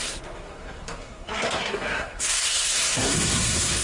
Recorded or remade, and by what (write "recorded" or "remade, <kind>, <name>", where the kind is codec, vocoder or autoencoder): remade, codec, SNAC